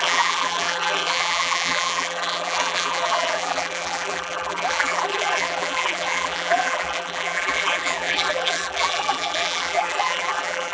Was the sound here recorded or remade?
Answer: remade